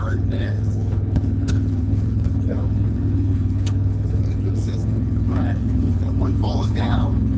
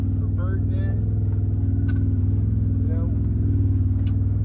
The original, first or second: second